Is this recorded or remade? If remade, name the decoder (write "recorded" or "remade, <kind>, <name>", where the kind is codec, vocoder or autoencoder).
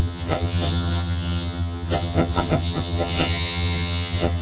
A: remade, vocoder, HiFi-GAN